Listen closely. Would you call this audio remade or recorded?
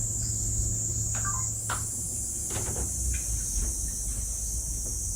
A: recorded